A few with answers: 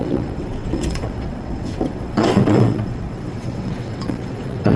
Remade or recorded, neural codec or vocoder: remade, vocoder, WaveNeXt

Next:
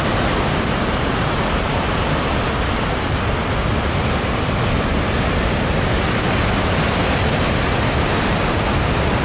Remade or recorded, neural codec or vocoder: recorded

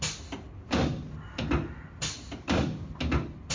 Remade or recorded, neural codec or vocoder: recorded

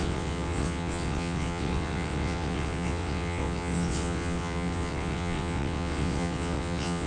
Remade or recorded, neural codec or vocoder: remade, vocoder, WaveNeXt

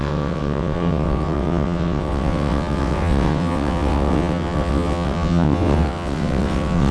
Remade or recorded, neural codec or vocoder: remade, vocoder, WaveNeXt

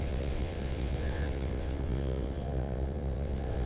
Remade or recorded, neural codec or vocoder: remade, vocoder, WaveNeXt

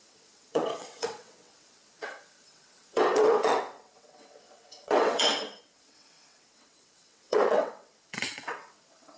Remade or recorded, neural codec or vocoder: remade, vocoder, WaveNeXt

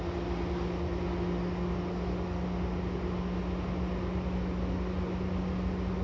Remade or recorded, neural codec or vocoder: recorded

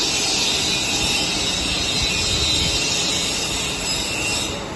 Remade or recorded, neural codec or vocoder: recorded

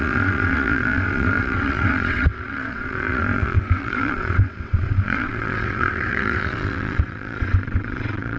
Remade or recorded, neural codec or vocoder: remade, vocoder, WaveNeXt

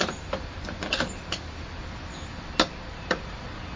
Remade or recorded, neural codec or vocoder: recorded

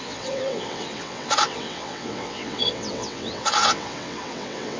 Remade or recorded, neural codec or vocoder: remade, vocoder, WaveNeXt